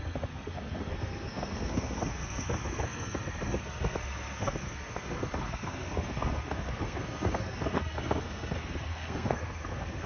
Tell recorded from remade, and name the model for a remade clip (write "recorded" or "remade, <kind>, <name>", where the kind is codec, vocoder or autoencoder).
remade, codec, SNAC